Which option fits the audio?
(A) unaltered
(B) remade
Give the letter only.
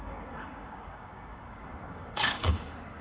B